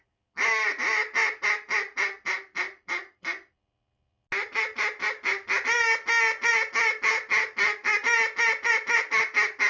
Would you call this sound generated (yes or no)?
no